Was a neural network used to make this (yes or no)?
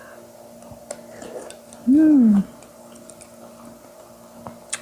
no